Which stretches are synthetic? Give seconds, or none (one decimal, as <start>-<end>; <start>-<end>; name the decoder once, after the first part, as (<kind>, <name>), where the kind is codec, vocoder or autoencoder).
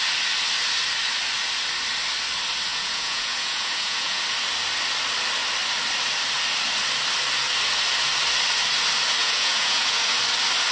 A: 2.7-4.2 (vocoder, Vocos); 9.2-10.0